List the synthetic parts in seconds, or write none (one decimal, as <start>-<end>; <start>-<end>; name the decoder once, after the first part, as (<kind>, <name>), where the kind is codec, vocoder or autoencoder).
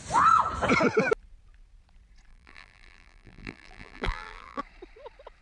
2.3-4.6 (vocoder, BigVGAN v2)